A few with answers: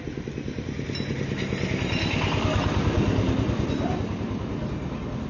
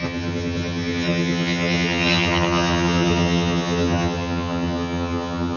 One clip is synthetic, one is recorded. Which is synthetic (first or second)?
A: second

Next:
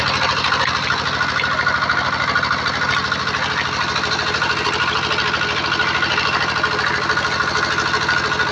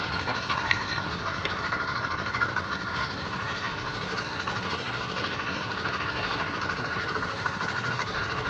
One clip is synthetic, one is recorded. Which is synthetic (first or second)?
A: second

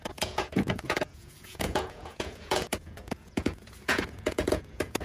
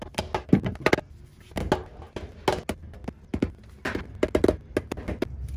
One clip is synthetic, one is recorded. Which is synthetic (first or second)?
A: first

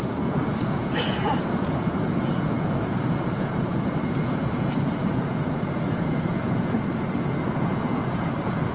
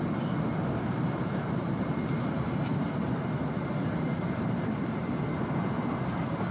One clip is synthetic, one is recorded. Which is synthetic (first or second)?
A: first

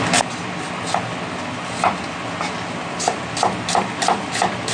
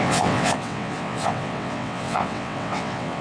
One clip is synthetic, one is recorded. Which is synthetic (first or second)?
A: second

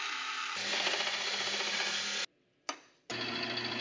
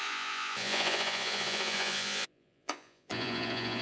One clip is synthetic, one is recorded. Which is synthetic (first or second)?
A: second